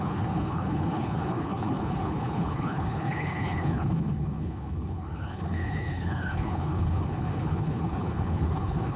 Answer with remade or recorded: remade